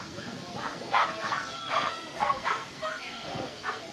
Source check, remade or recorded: remade